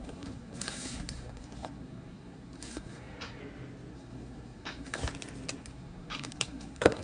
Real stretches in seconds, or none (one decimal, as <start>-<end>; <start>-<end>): 3.4-3.9; 5.0-5.6